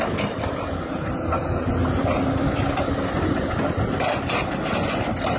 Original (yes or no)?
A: yes